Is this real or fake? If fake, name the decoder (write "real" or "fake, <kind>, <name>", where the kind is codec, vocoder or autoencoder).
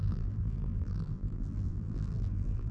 fake, vocoder, BigVGAN v2